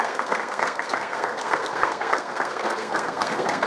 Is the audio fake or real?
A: fake